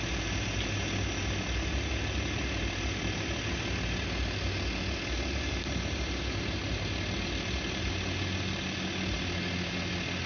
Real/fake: real